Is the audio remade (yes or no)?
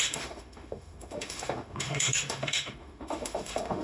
yes